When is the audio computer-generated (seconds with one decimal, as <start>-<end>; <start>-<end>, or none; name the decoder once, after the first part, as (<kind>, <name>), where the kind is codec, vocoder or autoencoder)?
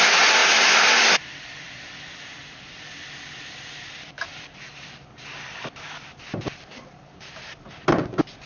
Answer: 0.4-1.8 (vocoder, BigVGAN v2); 2.4-7.5